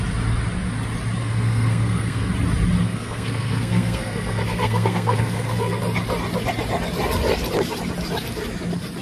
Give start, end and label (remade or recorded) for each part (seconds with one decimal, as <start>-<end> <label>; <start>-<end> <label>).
0.0-1.2 recorded; 1.2-2.3 remade; 2.3-2.8 recorded; 2.8-5.8 remade; 5.8-9.0 recorded